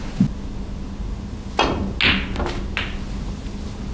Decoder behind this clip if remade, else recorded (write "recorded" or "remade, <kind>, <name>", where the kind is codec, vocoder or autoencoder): recorded